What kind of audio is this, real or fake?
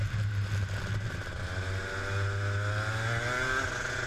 real